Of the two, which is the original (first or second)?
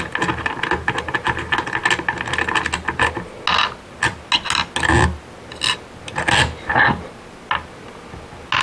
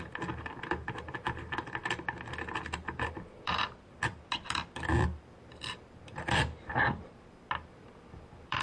first